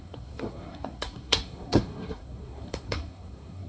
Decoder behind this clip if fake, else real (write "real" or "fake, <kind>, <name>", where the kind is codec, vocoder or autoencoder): fake, codec, SNAC